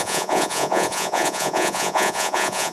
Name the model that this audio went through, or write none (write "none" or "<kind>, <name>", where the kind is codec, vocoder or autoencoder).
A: vocoder, Vocos